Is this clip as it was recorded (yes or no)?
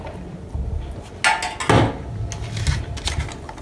yes